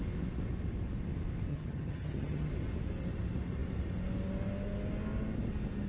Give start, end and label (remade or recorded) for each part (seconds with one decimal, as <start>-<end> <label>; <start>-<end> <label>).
0.0-1.5 recorded; 1.5-2.5 remade; 2.5-5.9 recorded

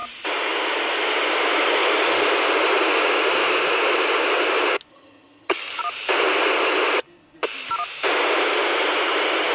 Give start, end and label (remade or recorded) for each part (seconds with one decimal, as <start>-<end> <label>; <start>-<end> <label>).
0.0-4.9 recorded; 4.9-5.8 remade; 5.8-9.5 recorded

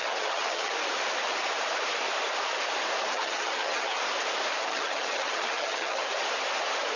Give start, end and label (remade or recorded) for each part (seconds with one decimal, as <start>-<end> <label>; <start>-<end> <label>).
0.0-0.7 remade; 0.7-3.1 recorded; 3.1-4.0 remade; 4.0-4.6 recorded; 4.6-6.1 remade; 6.1-7.0 recorded